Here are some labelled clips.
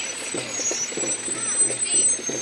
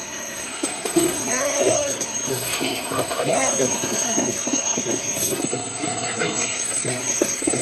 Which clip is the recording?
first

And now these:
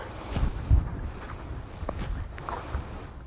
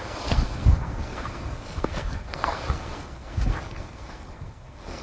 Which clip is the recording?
first